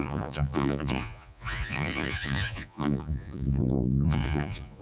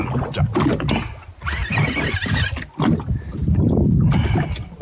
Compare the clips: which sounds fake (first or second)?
first